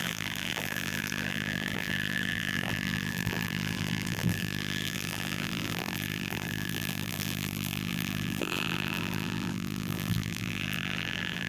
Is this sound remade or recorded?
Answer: remade